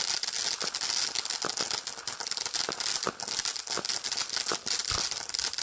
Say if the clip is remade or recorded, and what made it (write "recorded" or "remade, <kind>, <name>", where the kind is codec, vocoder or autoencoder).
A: recorded